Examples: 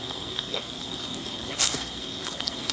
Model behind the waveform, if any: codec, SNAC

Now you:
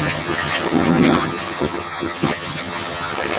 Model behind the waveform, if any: vocoder, HiFi-GAN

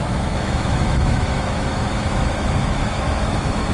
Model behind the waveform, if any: autoencoder, DAC-VAE